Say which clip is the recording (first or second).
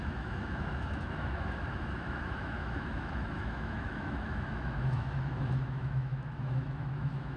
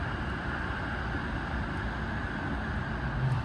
second